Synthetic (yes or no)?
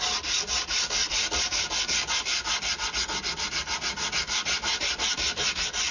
no